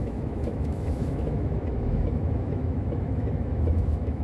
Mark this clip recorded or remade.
remade